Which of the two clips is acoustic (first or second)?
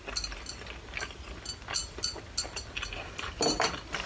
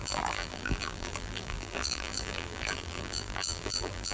first